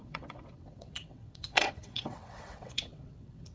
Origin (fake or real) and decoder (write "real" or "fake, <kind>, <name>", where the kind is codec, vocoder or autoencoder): fake, vocoder, WaveNeXt